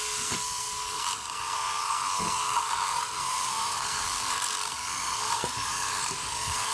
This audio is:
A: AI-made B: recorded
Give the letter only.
A